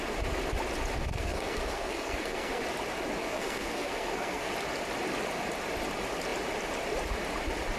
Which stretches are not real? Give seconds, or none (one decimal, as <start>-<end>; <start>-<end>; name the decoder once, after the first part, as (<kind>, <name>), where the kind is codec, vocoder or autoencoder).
1.0-2.6 (codec, SNAC); 3.2-4.5